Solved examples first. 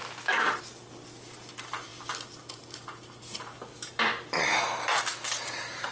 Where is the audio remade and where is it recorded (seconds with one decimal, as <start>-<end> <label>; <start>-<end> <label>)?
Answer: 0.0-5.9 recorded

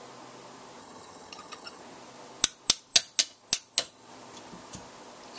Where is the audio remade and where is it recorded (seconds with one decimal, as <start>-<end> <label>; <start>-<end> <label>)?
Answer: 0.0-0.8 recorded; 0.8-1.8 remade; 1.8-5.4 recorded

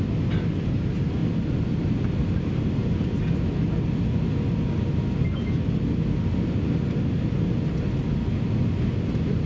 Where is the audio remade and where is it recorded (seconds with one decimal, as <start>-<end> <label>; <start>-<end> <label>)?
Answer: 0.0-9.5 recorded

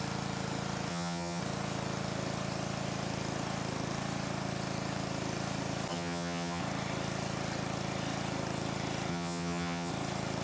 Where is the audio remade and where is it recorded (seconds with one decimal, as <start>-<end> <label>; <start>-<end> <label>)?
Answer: 0.0-0.9 recorded; 0.9-1.4 remade; 1.4-5.9 recorded; 5.9-6.6 remade; 6.6-9.1 recorded; 9.1-9.9 remade; 9.9-10.4 recorded

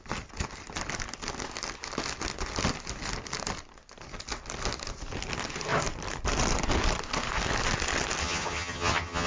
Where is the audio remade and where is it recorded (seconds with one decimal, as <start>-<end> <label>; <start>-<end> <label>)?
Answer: 0.0-8.2 recorded; 8.2-9.3 remade

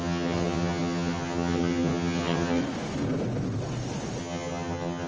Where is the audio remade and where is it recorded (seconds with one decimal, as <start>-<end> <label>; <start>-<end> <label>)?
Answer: 0.0-2.6 remade; 2.6-4.2 recorded; 4.2-5.1 remade

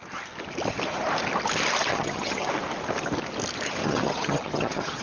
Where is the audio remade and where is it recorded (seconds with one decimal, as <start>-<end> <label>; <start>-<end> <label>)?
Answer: 0.0-1.9 recorded; 1.9-2.5 remade; 2.5-3.8 recorded; 3.8-5.0 remade

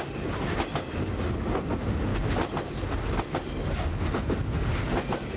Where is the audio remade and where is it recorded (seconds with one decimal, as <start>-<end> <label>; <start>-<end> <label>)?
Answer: 0.0-5.4 recorded